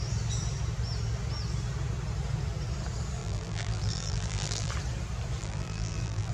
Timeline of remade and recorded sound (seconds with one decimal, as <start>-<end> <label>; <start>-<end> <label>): 0.0-3.2 recorded; 3.2-4.7 remade; 4.7-5.4 recorded; 5.4-6.3 remade